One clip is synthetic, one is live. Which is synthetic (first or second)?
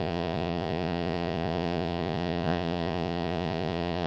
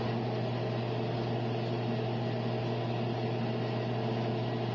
first